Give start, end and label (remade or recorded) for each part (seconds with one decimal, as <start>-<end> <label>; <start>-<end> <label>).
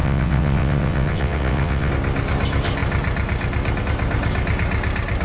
0.0-1.9 remade; 1.9-5.2 recorded